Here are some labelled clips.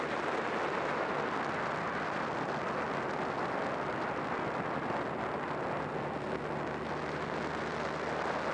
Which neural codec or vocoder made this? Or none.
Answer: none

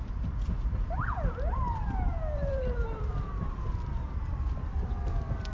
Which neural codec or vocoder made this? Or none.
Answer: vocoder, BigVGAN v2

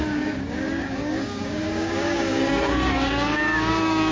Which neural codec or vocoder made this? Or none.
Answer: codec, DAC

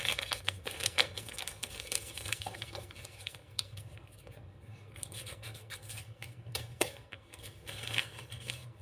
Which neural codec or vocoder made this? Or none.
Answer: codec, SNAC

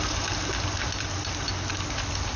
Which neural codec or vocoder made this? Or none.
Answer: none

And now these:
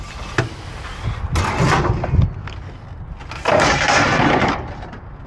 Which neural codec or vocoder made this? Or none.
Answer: none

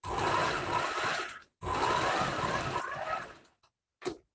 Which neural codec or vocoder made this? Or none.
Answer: none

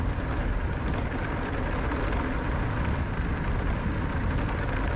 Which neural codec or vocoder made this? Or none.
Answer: none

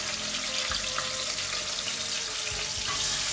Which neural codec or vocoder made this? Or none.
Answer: none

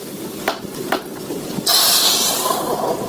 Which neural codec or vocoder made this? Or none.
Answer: none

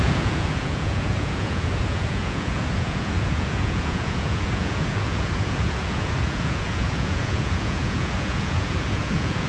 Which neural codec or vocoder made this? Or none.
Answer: vocoder, Vocos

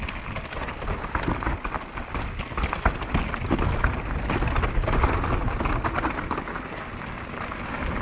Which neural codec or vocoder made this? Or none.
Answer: none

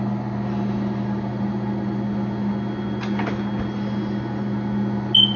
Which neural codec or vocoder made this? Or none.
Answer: none